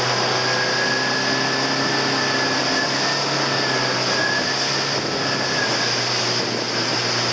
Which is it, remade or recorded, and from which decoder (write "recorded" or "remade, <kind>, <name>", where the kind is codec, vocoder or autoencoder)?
recorded